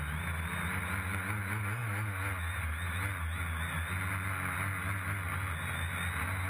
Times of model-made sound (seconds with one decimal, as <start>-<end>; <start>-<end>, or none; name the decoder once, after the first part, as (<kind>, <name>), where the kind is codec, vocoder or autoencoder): none

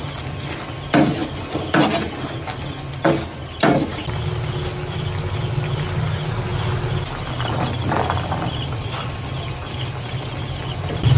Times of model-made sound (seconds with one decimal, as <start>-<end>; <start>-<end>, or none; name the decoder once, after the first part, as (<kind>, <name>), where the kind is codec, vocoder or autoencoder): none

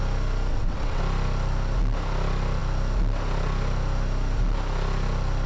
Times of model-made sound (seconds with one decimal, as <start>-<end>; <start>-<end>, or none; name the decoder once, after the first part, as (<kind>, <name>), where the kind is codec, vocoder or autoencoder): 0.5-1.0 (vocoder, WaveNeXt)